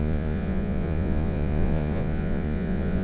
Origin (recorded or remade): remade